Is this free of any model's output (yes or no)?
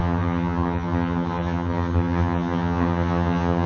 no